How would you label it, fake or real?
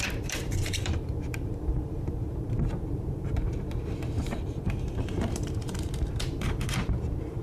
fake